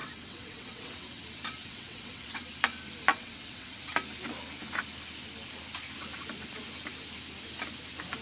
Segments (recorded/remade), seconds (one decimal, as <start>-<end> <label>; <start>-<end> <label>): 0.0-1.2 remade; 1.2-1.6 recorded; 1.6-2.4 remade; 2.4-3.1 recorded; 3.1-3.8 remade; 3.8-8.2 recorded